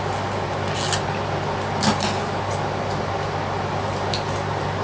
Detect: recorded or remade recorded